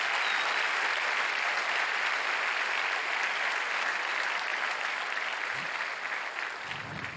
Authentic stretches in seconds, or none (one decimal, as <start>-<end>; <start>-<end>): 0.0-7.2

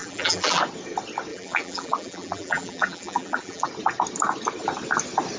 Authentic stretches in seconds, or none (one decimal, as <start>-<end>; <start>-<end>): 0.6-1.3; 3.7-5.4

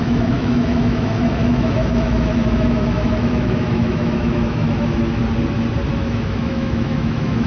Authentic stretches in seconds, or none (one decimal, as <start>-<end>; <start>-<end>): 5.2-5.9

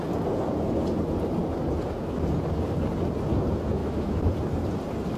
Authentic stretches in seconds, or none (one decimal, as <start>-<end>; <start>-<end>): 0.0-3.8; 4.3-5.2

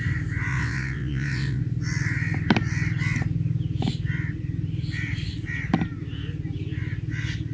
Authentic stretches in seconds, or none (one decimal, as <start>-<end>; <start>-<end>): 0.0-0.5; 1.6-7.5